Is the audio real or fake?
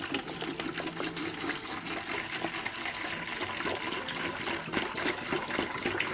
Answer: real